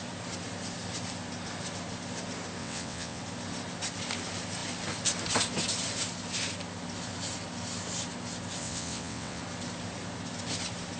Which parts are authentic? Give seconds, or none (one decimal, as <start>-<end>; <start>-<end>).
0.0-2.6; 3.2-8.6; 9.4-11.0